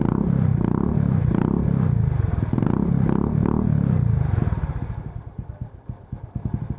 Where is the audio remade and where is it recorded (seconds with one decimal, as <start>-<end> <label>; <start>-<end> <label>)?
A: 0.0-6.8 recorded